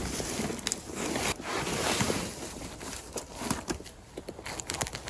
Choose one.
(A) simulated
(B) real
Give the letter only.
B